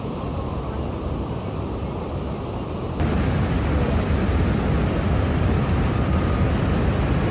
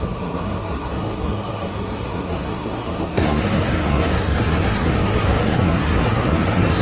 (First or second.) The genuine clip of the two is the first